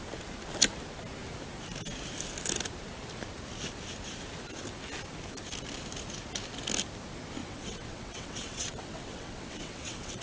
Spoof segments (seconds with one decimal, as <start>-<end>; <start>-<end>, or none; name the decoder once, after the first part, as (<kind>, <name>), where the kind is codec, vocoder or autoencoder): 7.4-10.2 (vocoder, WaveNeXt)